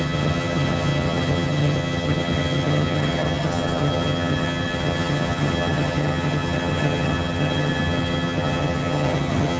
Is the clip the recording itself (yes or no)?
no